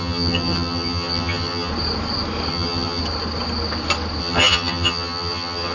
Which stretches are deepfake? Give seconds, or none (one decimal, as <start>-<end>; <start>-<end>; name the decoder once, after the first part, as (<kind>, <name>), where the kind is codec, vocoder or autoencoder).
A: 0.0-1.7 (vocoder, HiFi-GAN); 2.5-3.0; 4.2-5.7